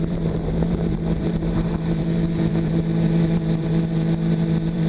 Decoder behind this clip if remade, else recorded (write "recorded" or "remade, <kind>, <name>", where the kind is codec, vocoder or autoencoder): remade, vocoder, BigVGAN v2